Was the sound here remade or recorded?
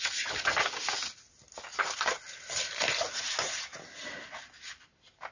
recorded